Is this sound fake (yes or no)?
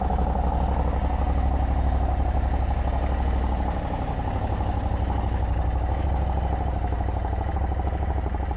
no